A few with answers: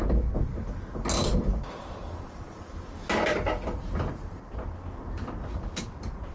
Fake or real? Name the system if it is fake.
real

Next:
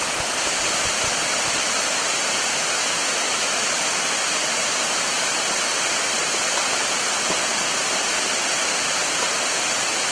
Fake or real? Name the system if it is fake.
real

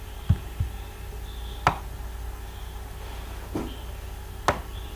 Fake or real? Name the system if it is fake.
real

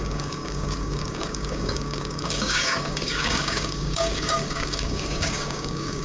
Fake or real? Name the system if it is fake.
fake, codec, DAC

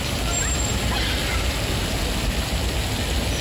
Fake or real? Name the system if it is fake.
real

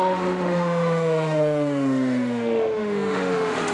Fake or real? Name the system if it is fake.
fake, autoencoder, DAC-VAE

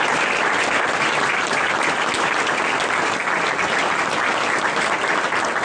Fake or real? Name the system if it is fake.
real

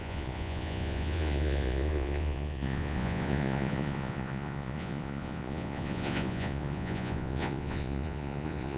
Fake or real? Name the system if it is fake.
fake, vocoder, Vocos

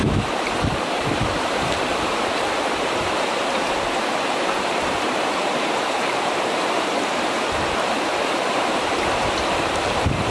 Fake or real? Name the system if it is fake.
fake, vocoder, BigVGAN v2